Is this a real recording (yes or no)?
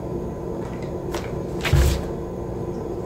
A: yes